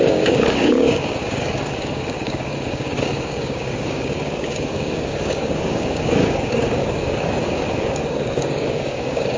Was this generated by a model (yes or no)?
yes